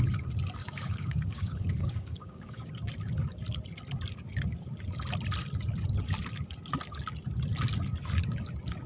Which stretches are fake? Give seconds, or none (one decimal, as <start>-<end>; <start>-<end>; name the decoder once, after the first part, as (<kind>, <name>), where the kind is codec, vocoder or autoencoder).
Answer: 0.6-2.7 (codec, DAC)